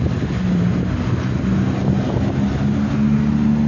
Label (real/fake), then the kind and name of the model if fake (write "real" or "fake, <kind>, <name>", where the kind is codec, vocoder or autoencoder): real